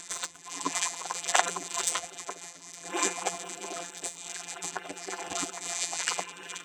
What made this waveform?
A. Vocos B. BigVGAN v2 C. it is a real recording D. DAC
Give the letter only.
B